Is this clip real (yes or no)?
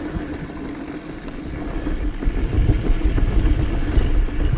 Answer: yes